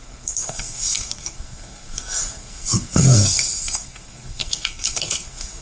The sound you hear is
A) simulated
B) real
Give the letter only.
A